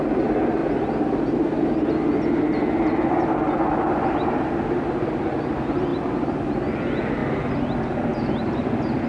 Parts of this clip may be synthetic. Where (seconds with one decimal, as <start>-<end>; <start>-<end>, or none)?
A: none